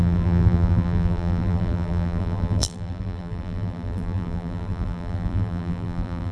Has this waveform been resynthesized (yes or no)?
yes